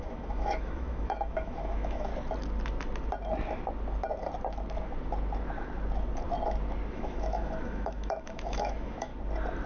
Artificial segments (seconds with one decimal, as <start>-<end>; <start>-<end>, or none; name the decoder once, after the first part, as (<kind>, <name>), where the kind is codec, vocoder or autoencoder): 0.0-2.1 (autoencoder, DAC-VAE); 6.9-9.1